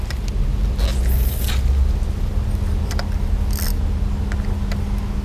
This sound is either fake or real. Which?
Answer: real